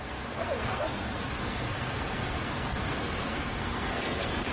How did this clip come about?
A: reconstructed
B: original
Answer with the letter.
A